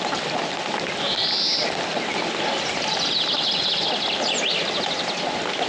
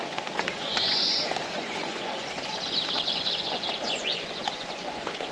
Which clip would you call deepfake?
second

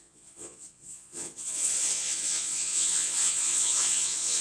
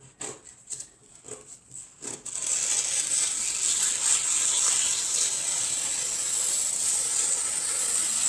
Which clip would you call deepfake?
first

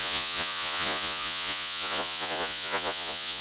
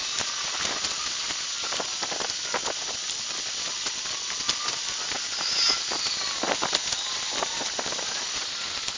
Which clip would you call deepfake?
first